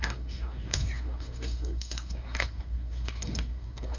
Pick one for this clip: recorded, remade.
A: remade